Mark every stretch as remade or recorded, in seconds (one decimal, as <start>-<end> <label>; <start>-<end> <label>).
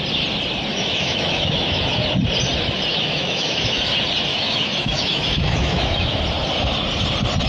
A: 0.0-0.7 recorded; 0.7-2.0 remade; 2.0-2.9 recorded; 2.9-3.9 remade; 3.9-4.3 recorded; 4.3-6.2 remade; 6.2-7.5 recorded